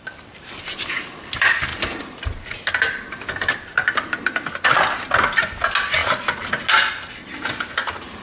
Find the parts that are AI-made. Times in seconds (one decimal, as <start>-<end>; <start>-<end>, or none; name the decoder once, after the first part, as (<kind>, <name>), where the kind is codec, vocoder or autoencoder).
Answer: none